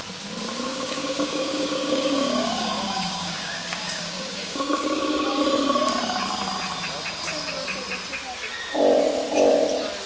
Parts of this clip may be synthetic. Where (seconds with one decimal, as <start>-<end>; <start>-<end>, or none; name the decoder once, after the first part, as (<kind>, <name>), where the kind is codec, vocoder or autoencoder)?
0.7-5.4 (codec, DAC)